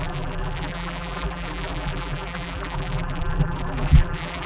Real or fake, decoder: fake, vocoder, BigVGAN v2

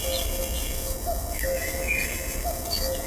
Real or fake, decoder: fake, autoencoder, DAC-VAE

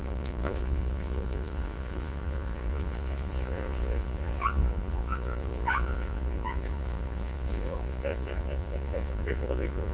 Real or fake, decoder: fake, vocoder, Vocos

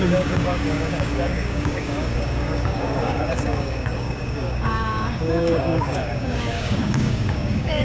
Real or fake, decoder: fake, codec, DAC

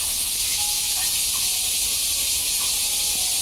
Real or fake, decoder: real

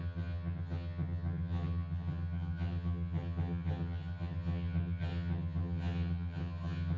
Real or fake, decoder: fake, vocoder, HiFi-GAN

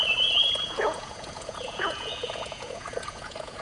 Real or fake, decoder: fake, vocoder, Vocos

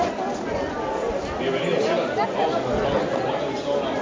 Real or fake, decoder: real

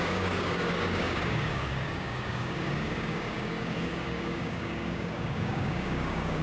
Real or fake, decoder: fake, codec, DAC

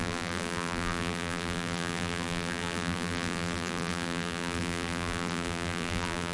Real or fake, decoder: fake, vocoder, BigVGAN v2